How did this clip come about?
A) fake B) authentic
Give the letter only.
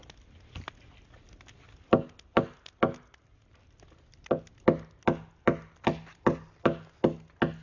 B